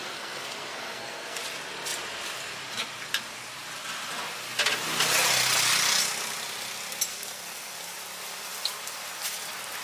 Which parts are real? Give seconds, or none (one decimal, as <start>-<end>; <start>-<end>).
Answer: 1.4-7.1; 7.8-9.8